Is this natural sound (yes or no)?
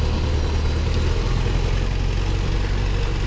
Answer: yes